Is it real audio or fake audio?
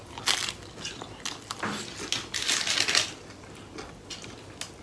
real